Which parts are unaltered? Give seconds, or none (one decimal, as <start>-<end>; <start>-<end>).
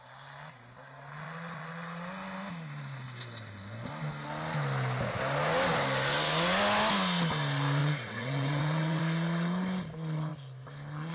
0.0-7.8; 9.0-11.1